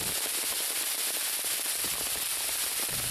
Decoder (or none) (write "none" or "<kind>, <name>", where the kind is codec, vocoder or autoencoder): none